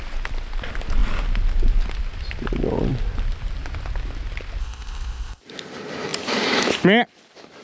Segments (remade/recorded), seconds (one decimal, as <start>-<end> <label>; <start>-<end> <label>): 0.0-4.6 recorded; 4.6-5.4 remade; 5.4-7.6 recorded